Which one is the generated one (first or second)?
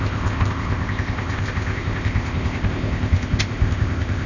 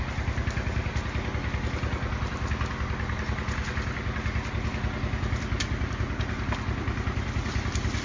first